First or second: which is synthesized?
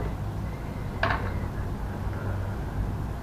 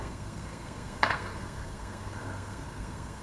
second